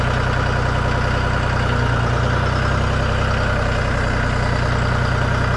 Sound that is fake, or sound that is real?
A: real